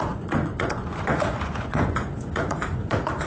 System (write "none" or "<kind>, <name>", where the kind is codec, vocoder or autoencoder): vocoder, Vocos